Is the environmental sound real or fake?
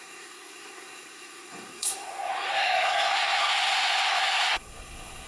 fake